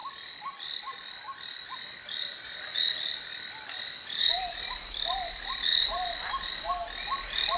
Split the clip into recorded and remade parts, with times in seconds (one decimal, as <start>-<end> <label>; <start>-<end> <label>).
0.0-1.8 remade; 1.8-5.7 recorded; 5.7-6.5 remade; 6.5-7.6 recorded

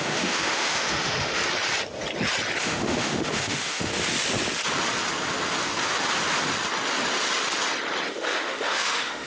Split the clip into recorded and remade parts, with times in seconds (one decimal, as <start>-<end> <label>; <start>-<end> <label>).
0.0-1.4 remade; 1.4-2.6 recorded; 2.6-3.9 remade; 3.9-8.1 recorded; 8.1-9.3 remade

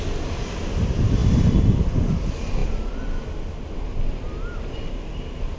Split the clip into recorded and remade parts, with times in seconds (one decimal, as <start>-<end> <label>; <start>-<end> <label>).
0.0-5.6 recorded

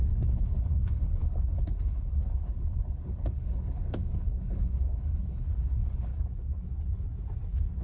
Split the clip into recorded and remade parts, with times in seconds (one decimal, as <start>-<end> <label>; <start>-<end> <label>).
0.0-6.1 remade; 6.1-7.8 recorded

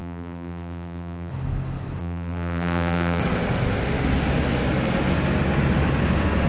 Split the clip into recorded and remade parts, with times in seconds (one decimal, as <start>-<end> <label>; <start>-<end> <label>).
0.0-1.3 remade; 1.3-2.0 recorded; 2.0-3.2 remade; 3.2-6.5 recorded